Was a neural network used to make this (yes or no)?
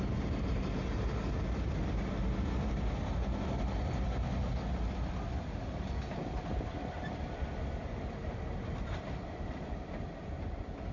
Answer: no